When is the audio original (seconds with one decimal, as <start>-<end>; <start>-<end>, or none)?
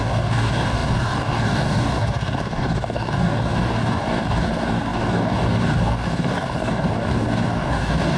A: none